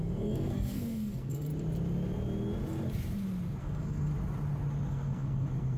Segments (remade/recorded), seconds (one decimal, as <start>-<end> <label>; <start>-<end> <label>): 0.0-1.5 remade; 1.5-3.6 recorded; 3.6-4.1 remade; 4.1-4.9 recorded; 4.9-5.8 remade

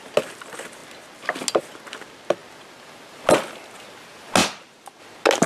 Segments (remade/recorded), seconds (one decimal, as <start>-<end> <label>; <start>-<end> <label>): 0.0-4.4 recorded; 4.4-5.0 remade; 5.0-5.5 recorded

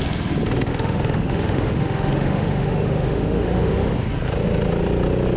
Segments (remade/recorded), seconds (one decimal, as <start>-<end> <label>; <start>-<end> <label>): 0.0-0.7 recorded; 0.7-3.9 remade; 3.9-5.4 recorded

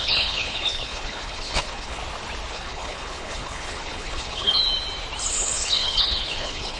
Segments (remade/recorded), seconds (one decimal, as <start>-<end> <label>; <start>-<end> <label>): 0.0-2.0 remade; 2.0-2.5 recorded; 2.5-4.6 remade; 4.6-5.3 recorded; 5.3-6.8 remade

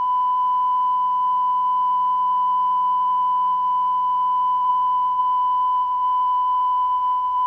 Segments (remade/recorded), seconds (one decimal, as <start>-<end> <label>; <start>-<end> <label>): 0.0-7.5 recorded

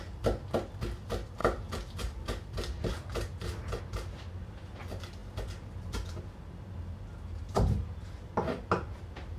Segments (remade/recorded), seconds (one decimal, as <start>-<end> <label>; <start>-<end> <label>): 0.0-9.4 recorded

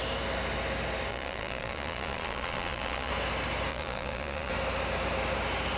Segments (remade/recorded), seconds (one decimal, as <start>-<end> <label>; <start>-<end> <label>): 0.0-1.1 recorded; 1.1-3.1 remade; 3.1-3.7 recorded; 3.7-4.5 remade; 4.5-5.8 recorded

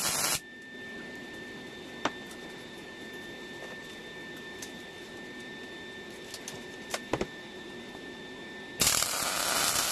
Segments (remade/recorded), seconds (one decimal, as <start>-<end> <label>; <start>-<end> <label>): 0.0-9.9 recorded